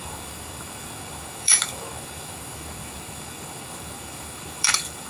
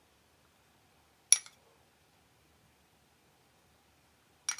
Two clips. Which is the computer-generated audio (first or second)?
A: first